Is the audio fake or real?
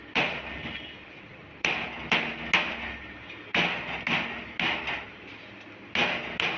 real